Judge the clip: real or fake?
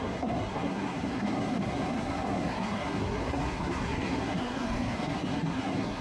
fake